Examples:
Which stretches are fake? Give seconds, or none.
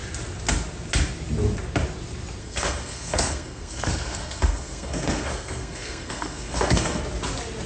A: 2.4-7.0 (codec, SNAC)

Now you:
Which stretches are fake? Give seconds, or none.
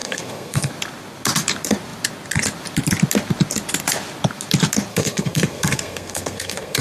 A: 0.0-0.7 (codec, SNAC); 4.9-6.8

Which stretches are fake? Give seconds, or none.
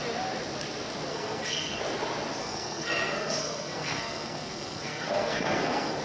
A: 1.1-1.8 (codec, SNAC); 2.4-6.0